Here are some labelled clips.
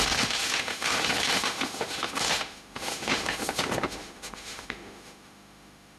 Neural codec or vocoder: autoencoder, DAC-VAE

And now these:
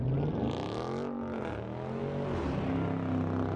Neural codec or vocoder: none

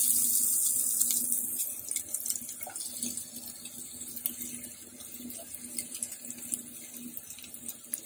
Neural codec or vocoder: none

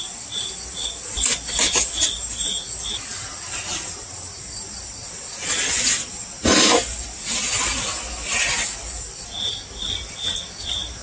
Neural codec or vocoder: none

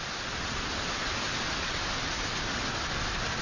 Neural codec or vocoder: none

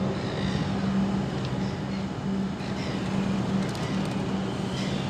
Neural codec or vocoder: none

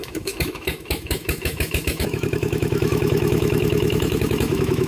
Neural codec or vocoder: autoencoder, DAC-VAE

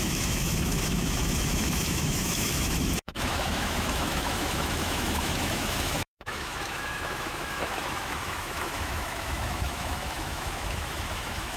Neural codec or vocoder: autoencoder, DAC-VAE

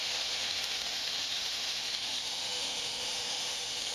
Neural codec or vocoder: autoencoder, DAC-VAE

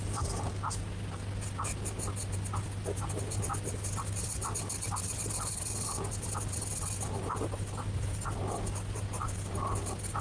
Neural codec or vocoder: none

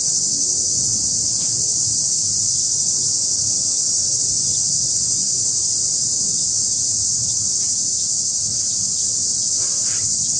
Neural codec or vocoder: none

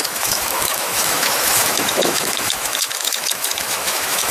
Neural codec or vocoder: autoencoder, DAC-VAE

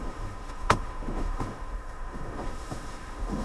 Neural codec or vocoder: autoencoder, DAC-VAE